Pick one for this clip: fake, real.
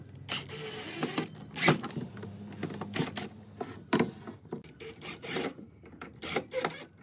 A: real